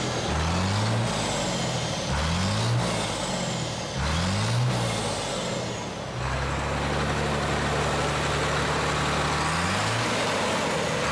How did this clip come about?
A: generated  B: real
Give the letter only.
B